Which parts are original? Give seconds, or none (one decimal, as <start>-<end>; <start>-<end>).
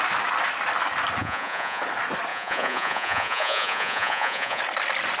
0.0-1.2; 1.8-2.3; 4.6-5.2